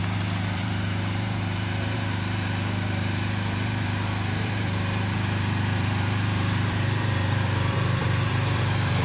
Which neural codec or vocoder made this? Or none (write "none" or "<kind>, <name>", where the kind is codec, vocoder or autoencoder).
vocoder, BigVGAN v2